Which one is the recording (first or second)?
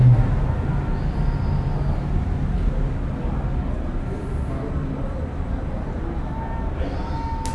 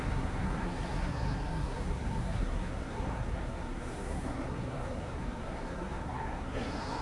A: first